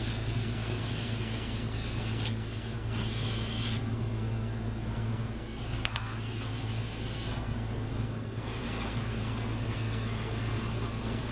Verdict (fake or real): fake